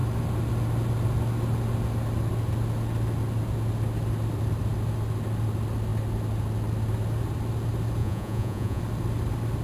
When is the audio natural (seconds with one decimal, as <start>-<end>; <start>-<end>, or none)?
0.0-8.0; 8.8-9.6